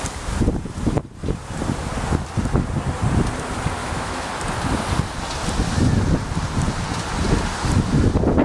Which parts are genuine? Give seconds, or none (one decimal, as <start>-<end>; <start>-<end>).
0.0-3.8; 4.3-8.4